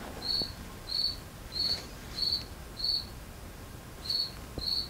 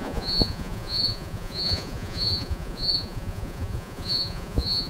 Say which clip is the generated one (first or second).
second